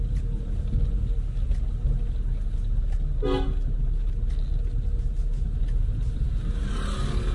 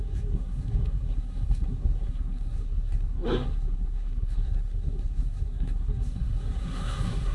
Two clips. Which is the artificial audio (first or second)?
second